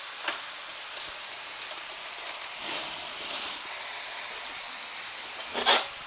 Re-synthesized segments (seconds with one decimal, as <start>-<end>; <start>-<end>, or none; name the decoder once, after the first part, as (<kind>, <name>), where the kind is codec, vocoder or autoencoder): none